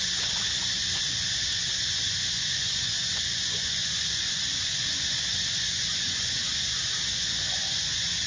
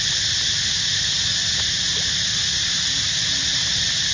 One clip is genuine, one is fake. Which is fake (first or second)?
first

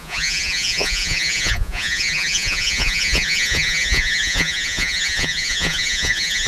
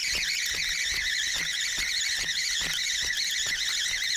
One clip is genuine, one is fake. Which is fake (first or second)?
first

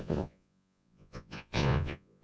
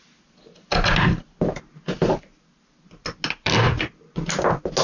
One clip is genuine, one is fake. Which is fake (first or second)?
first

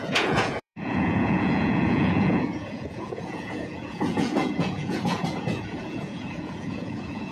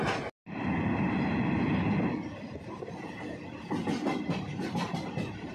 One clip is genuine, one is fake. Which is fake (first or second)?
first